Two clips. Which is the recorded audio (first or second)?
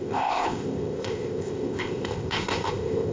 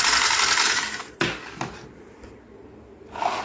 second